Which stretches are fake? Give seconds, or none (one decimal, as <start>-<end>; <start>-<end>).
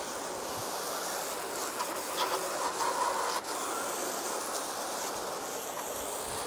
none